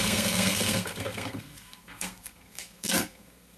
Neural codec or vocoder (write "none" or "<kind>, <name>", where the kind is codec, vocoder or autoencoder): codec, SNAC